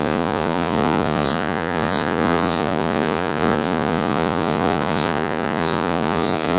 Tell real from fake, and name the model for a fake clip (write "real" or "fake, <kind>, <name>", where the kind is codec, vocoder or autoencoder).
fake, vocoder, Vocos